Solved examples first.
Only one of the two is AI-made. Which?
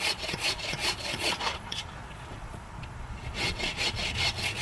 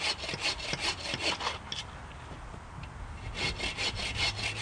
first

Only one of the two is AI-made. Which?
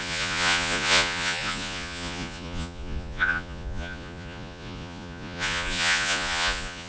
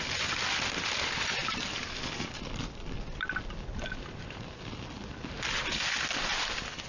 first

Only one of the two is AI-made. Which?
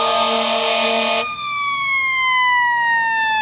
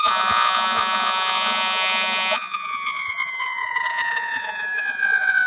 second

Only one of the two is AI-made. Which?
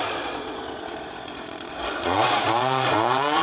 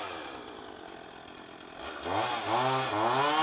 first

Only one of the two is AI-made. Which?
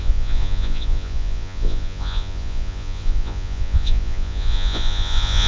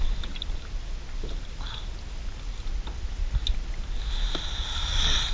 first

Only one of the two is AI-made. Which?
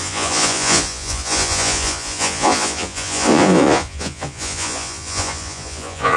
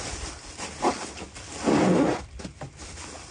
first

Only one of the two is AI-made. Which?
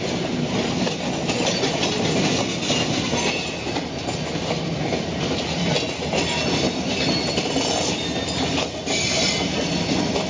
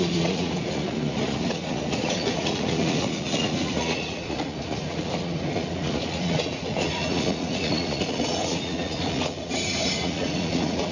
second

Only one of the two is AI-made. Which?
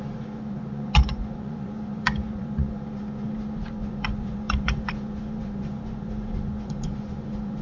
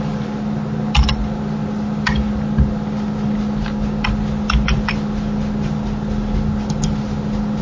first